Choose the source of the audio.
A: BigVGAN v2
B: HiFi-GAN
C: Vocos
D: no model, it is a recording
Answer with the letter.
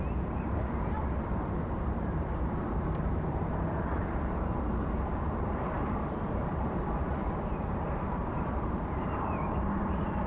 A